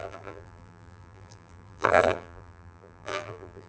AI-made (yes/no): yes